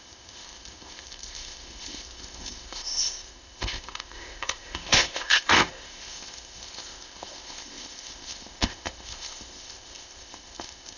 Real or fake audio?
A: fake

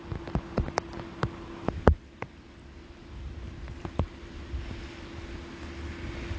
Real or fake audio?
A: real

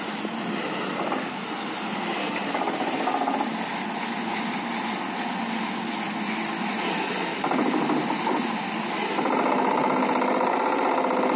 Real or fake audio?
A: real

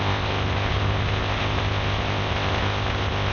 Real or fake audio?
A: fake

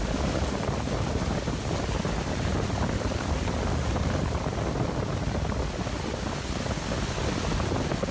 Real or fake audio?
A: real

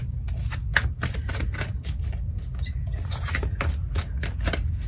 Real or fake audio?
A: real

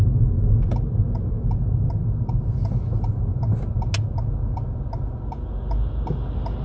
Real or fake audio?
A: real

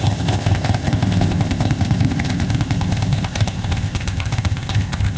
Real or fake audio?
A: fake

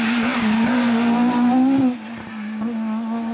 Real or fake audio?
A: real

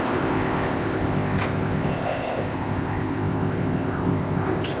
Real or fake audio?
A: fake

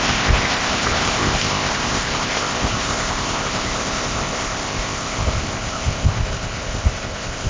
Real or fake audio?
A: fake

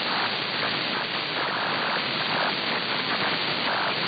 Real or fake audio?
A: real